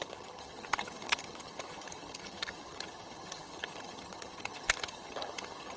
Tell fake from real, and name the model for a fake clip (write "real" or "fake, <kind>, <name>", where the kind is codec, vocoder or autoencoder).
fake, vocoder, HiFi-GAN